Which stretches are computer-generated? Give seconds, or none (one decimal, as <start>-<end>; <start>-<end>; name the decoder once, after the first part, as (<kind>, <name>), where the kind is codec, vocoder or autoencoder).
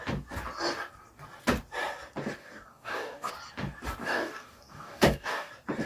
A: 2.4-3.3 (codec, DAC); 4.0-5.5